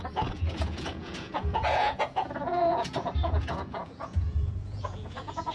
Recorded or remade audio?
remade